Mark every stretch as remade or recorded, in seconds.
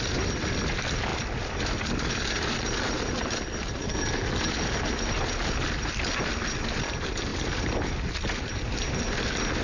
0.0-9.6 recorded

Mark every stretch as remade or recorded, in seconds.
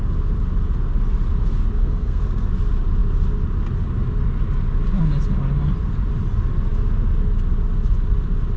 0.0-1.8 recorded; 1.8-2.5 remade; 2.5-8.6 recorded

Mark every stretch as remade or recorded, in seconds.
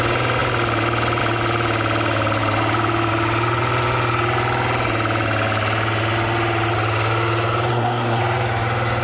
0.0-7.7 recorded; 7.7-8.2 remade; 8.2-9.0 recorded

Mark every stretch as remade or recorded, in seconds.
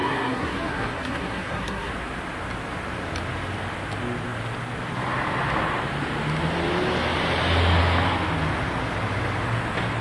0.0-1.9 remade; 1.9-10.0 recorded